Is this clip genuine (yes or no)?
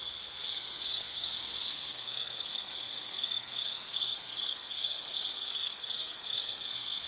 no